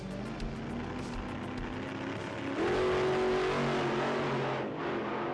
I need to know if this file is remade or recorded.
recorded